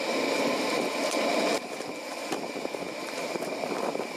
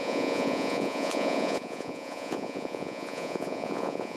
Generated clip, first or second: second